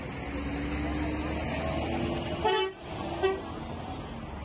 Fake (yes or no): no